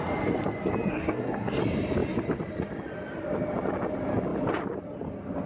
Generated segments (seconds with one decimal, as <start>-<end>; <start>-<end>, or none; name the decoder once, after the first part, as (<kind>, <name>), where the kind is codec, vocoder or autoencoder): 0.9-1.6 (codec, SNAC)